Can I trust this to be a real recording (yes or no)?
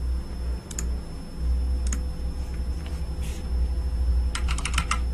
yes